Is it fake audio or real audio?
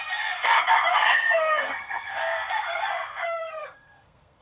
fake